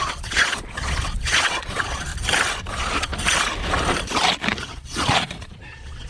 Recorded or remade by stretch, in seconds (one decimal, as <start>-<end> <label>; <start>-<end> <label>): 0.0-2.1 remade; 2.1-2.7 recorded; 2.7-3.1 remade; 3.1-4.6 recorded; 4.6-6.1 remade